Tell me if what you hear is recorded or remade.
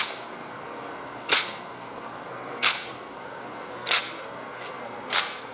remade